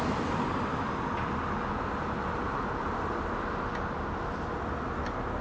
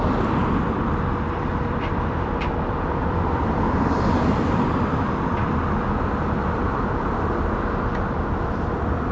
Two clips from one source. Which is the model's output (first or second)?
second